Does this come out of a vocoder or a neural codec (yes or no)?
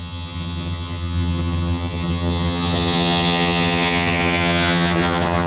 yes